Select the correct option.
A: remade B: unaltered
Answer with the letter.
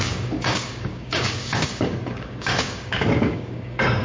A